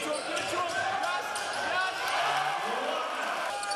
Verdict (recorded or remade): recorded